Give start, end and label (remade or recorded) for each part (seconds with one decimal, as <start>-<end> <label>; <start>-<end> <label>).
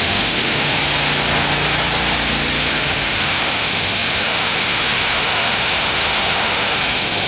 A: 0.0-0.8 remade; 0.8-2.7 recorded; 2.7-7.3 remade